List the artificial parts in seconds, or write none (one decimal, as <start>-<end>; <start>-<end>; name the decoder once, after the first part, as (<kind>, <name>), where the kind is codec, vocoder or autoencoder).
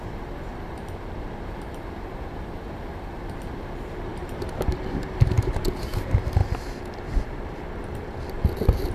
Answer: 0.0-6.4 (vocoder, BigVGAN v2); 8.3-8.9